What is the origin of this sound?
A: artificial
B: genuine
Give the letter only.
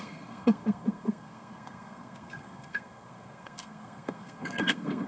A